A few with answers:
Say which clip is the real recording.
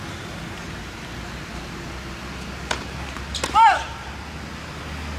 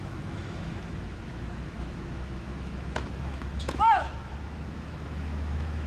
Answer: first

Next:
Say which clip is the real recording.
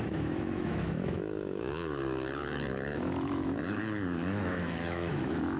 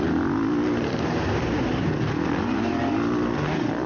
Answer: second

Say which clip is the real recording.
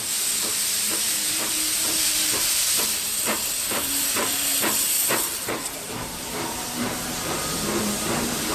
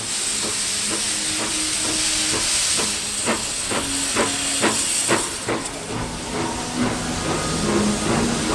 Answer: second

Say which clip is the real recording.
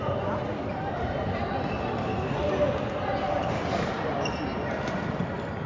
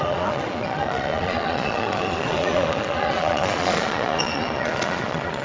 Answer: first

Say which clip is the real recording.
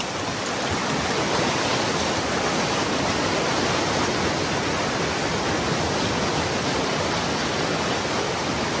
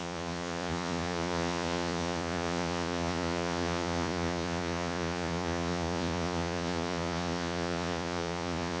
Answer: first